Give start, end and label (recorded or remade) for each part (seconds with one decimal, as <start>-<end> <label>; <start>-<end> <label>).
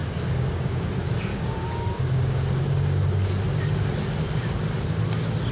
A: 0.0-0.9 remade; 0.9-1.3 recorded; 1.3-3.3 remade; 3.3-5.5 recorded